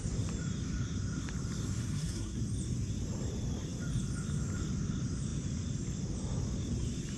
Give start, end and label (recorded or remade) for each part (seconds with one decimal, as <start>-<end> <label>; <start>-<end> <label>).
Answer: 0.0-1.8 recorded; 1.8-2.4 remade; 2.4-7.2 recorded